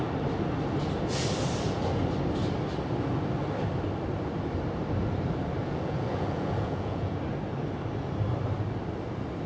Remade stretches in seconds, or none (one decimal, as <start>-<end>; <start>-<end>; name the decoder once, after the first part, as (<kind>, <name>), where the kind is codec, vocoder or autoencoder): 5.6-7.2 (vocoder, Vocos)